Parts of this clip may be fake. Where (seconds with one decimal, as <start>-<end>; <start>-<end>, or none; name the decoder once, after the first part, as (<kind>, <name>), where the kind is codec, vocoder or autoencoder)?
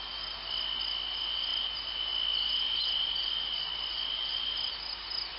none